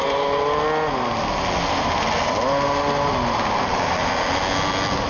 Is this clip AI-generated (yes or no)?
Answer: no